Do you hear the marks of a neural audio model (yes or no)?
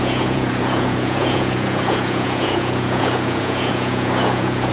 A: yes